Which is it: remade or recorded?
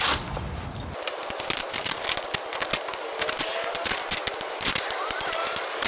recorded